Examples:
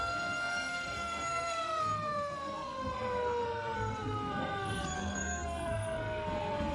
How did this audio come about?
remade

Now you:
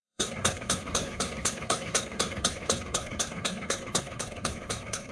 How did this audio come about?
remade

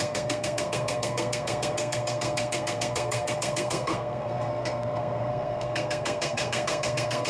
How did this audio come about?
remade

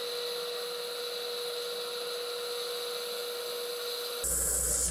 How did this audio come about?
recorded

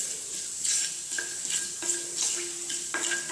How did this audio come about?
recorded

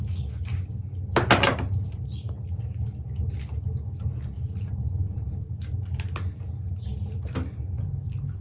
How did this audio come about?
recorded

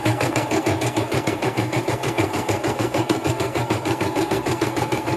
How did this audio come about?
remade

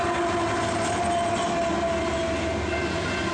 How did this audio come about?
recorded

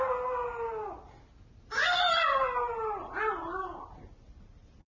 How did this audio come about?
recorded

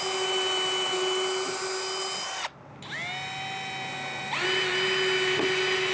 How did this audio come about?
recorded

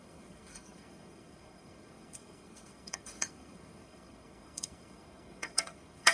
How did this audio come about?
remade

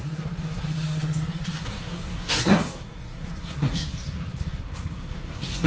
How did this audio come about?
remade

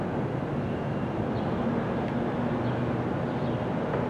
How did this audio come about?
recorded